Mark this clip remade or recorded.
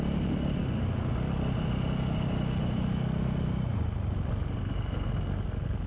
recorded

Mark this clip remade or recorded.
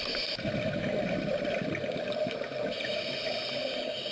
recorded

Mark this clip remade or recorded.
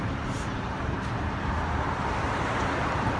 remade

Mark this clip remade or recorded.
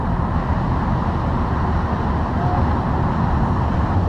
recorded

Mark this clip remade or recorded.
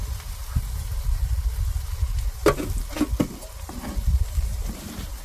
recorded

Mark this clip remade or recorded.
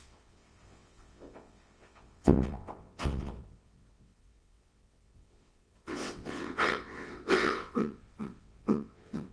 remade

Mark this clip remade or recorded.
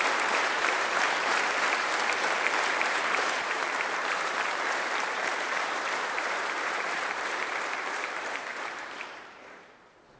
remade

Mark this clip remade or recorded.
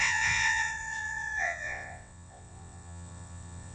remade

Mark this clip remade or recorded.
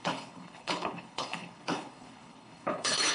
remade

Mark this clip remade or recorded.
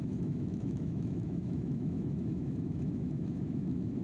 remade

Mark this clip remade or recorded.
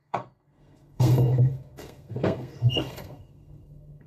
remade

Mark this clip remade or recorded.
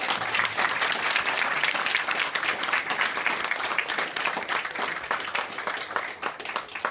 recorded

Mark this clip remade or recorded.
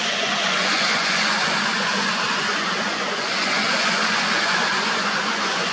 remade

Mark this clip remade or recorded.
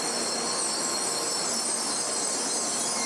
recorded